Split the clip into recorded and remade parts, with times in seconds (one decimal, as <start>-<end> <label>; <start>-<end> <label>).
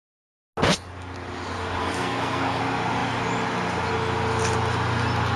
0.0-1.8 recorded; 1.8-2.6 remade; 2.6-5.4 recorded